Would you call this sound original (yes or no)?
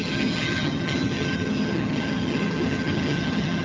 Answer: no